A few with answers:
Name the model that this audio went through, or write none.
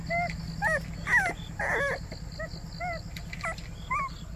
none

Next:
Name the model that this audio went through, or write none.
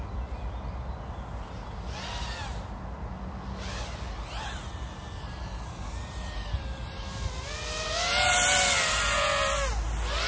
none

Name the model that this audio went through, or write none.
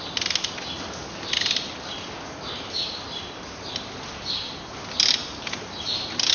none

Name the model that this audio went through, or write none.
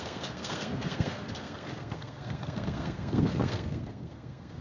codec, SNAC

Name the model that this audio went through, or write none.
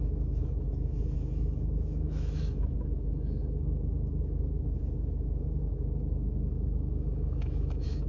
autoencoder, DAC-VAE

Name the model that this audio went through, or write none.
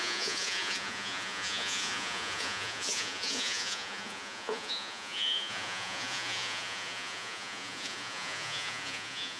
vocoder, Vocos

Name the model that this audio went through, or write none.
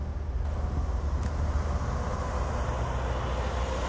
none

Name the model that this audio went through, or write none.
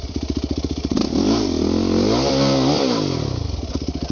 none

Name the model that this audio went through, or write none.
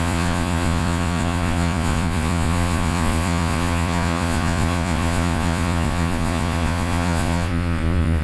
vocoder, Vocos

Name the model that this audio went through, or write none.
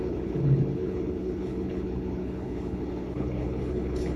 codec, HILCodec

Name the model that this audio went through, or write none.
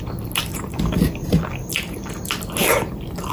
none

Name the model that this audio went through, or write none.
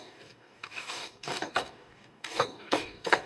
codec, DAC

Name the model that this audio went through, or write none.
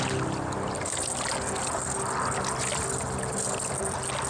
none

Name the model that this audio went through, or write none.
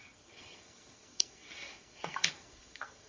codec, SNAC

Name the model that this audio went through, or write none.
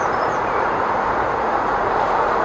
vocoder, Vocos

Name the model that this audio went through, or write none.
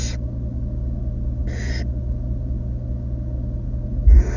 none